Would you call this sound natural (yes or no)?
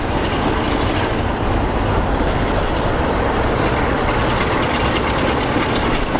yes